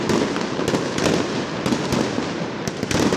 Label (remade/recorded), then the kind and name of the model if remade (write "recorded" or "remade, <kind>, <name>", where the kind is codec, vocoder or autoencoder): recorded